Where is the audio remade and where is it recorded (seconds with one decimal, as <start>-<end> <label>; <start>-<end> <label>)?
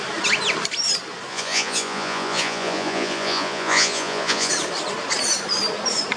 0.0-1.3 recorded; 1.3-4.5 remade; 4.5-6.2 recorded